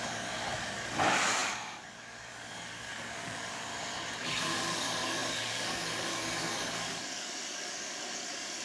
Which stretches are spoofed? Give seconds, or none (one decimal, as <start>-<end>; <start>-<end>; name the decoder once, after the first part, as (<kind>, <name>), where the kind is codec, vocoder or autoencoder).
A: 0.0-3.7 (codec, DAC); 4.2-8.6